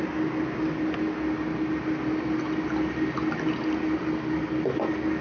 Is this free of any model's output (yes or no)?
yes